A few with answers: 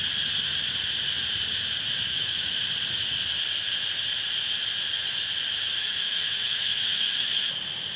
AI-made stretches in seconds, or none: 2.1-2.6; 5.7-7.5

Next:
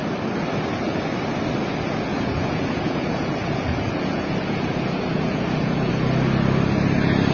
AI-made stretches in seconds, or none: 2.1-5.9

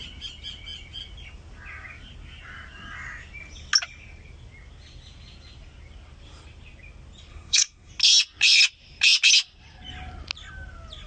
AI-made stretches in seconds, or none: 7.3-7.9